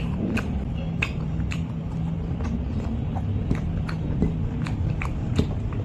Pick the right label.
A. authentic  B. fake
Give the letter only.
A